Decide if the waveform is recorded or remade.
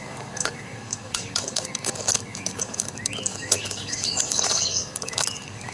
remade